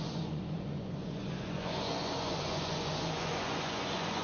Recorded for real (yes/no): no